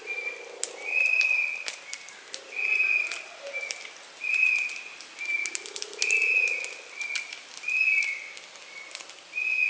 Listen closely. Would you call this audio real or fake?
real